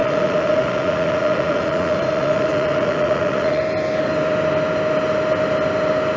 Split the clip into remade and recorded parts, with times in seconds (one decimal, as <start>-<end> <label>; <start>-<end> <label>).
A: 0.0-3.6 remade; 3.6-6.2 recorded